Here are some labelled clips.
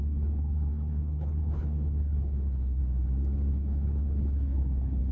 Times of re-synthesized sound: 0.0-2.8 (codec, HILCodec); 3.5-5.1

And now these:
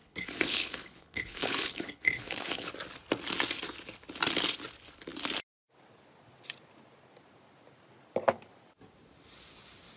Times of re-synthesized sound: 0.0-2.7 (codec, HILCodec)

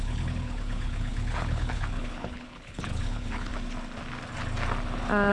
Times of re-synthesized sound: 0.0-3.5 (codec, HILCodec)

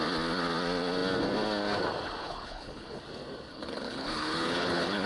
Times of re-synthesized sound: 2.2-3.0 (codec, HILCodec); 3.5-5.1

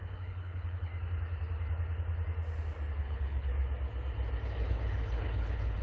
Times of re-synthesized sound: 0.0-0.9 (codec, HILCodec); 3.0-3.5; 4.5-5.8

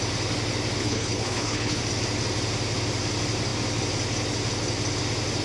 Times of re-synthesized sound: 0.8-1.8 (codec, HILCodec)

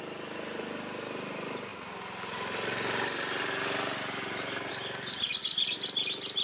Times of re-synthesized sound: none

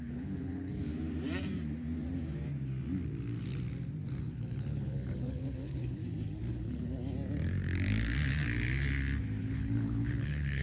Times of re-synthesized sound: 0.0-0.9 (codec, HILCodec); 4.2-6.0; 6.5-7.0; 9.4-10.6